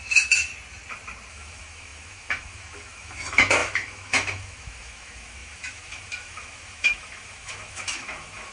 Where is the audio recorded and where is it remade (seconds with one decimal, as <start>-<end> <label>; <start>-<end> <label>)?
0.0-0.5 remade; 0.5-1.3 recorded; 1.3-8.5 remade